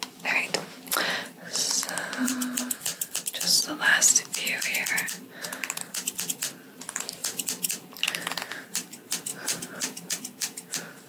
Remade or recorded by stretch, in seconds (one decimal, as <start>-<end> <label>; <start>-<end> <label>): 0.0-0.6 remade; 0.6-1.5 recorded; 1.5-2.9 remade; 2.9-4.9 recorded; 4.9-9.3 remade; 9.3-10.1 recorded; 10.1-11.1 remade